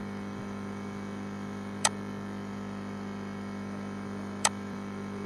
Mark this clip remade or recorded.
remade